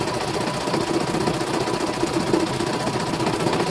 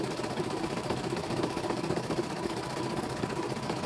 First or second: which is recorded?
first